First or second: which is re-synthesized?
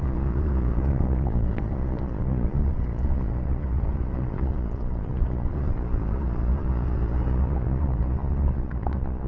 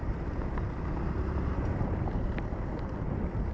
first